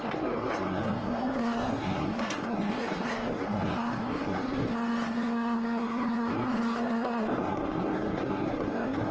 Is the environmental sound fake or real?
fake